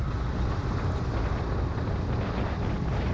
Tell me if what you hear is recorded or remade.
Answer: recorded